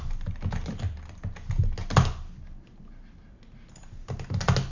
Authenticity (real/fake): real